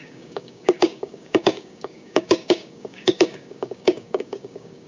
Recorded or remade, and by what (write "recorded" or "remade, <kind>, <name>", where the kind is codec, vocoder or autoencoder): remade, codec, DAC